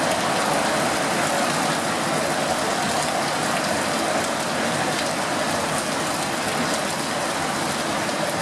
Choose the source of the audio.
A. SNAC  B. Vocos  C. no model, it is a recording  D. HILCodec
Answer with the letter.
C